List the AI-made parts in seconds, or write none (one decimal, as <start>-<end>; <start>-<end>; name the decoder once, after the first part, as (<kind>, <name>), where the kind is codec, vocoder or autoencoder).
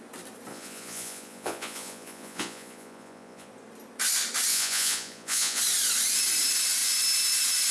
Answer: 0.5-3.5 (vocoder, Vocos); 4.5-5.6